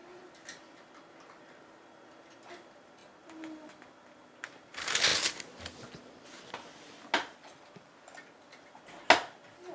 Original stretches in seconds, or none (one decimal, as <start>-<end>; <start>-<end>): 0.8-9.7